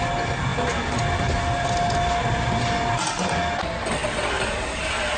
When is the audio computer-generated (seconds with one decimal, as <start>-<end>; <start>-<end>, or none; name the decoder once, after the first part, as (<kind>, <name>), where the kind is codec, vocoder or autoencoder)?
none